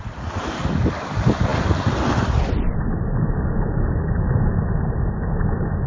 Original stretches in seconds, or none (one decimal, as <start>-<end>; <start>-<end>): 1.5-3.9